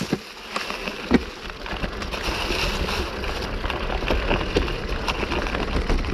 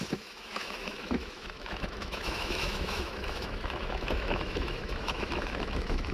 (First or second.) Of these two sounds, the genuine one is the first